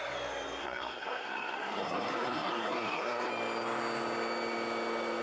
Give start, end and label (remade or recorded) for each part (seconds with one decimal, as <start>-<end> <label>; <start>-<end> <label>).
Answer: 0.0-0.6 recorded; 0.6-3.3 remade; 3.3-5.2 recorded